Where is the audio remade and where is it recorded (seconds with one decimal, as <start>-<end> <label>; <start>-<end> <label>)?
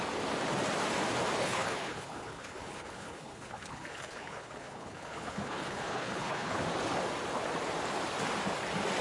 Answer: 0.0-1.4 recorded; 1.4-6.6 remade; 6.6-9.0 recorded